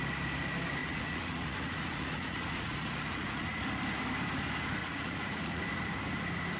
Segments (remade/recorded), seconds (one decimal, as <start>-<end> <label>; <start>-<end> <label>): 0.0-0.8 recorded; 0.8-3.6 remade; 3.6-4.8 recorded; 4.8-5.6 remade; 5.6-6.6 recorded